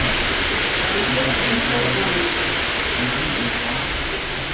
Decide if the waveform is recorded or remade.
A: recorded